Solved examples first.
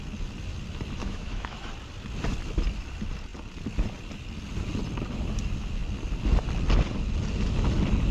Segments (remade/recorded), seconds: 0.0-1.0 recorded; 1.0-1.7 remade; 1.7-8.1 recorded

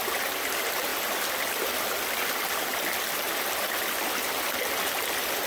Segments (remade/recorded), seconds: 0.0-5.5 recorded

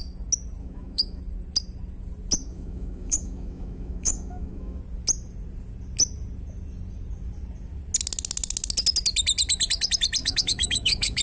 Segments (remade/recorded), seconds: 0.0-0.6 recorded; 0.6-1.2 remade; 1.2-2.4 recorded; 2.4-4.8 remade; 4.8-10.2 recorded; 10.2-11.2 remade